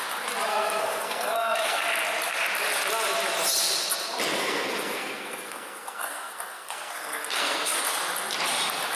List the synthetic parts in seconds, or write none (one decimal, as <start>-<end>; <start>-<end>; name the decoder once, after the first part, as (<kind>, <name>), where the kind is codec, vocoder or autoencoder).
0.5-1.8 (codec, SNAC); 4.3-7.8